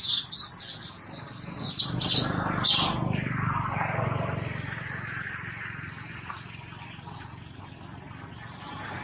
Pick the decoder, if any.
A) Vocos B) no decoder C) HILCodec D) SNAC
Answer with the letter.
B